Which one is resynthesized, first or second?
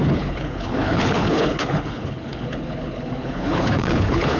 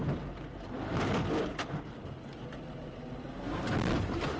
first